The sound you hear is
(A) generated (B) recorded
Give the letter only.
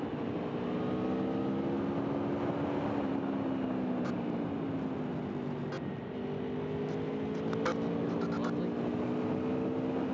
B